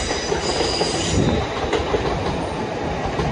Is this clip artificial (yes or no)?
no